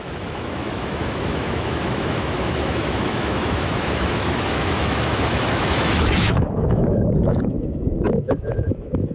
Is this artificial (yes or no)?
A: yes